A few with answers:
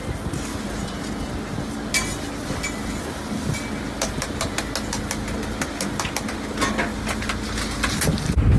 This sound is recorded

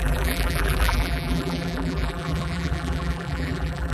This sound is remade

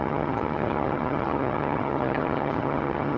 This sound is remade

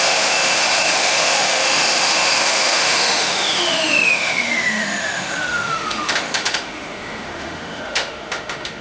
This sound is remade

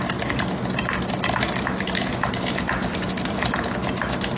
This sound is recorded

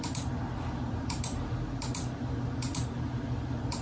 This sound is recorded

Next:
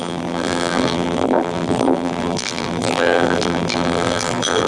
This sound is remade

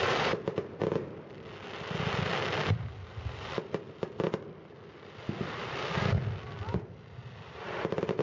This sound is recorded